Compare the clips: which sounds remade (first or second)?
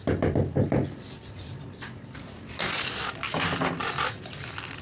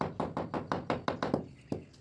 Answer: first